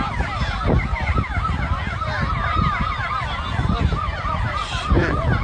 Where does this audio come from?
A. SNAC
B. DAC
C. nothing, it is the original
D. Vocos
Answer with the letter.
C